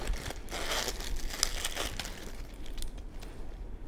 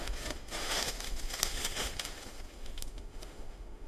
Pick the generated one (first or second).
second